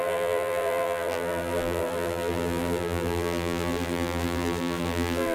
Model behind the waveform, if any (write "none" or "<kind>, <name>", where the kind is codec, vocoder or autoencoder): vocoder, BigVGAN v2